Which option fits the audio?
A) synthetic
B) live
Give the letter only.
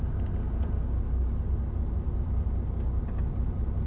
B